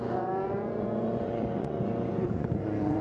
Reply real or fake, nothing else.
fake